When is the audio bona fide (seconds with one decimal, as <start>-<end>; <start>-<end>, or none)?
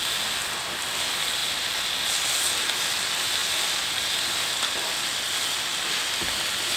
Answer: 0.0-6.8